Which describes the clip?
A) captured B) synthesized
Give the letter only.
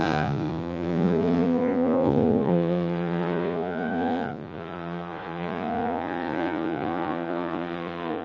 B